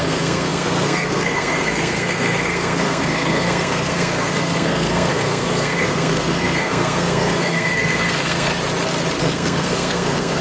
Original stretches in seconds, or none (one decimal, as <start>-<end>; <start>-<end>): 8.5-9.2

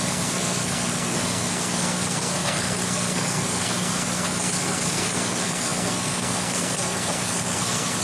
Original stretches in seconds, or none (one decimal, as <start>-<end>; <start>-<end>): none

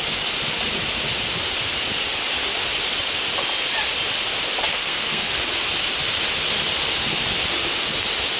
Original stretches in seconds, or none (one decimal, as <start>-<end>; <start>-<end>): 0.0-4.7; 5.3-8.4

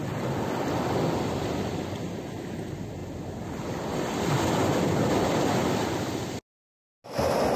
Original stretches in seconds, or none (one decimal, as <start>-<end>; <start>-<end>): 0.0-7.6

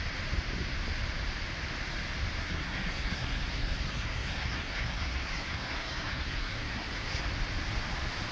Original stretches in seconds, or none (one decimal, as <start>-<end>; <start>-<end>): 0.0-2.4; 7.2-8.3

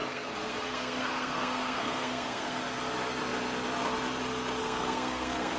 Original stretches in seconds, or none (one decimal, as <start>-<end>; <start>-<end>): 2.6-4.6

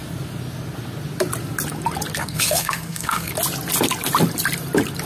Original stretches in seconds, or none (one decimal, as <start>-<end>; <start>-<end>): 0.0-2.2; 3.3-5.1

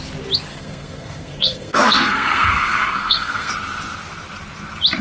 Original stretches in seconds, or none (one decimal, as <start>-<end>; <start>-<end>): 0.0-0.5; 3.5-5.0